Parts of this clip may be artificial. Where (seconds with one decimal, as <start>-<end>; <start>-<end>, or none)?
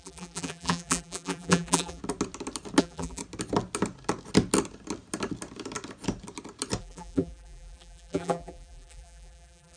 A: 0.0-2.0; 2.8-3.2; 6.8-9.8